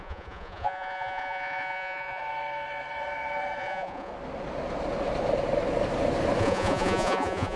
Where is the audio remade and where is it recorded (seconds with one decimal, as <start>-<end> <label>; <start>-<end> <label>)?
0.0-2.2 remade; 2.2-3.6 recorded; 3.6-4.1 remade; 4.1-6.4 recorded; 6.4-7.6 remade